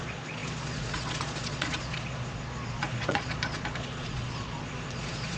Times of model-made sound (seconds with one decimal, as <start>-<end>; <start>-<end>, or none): 0.0-5.4

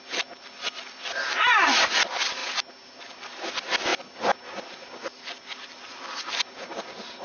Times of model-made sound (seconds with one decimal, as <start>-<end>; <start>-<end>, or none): none

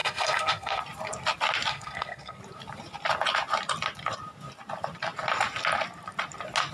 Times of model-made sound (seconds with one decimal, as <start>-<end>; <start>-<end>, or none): 0.0-0.8; 1.7-2.4

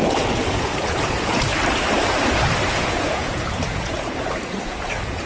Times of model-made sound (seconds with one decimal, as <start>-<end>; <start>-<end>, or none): 0.0-1.5; 2.7-5.3

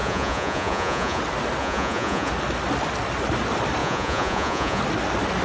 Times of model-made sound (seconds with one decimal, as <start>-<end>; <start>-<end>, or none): 0.0-1.2; 1.6-2.3; 3.8-4.8

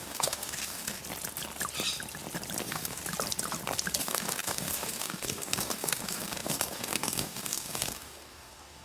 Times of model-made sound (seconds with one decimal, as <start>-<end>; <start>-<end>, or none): 0.0-1.0; 2.6-3.0; 4.0-8.8